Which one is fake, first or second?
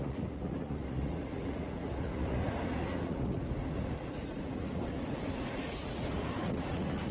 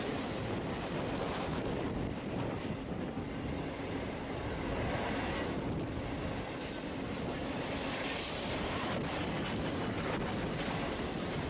first